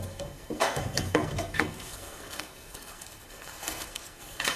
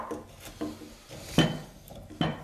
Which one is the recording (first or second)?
second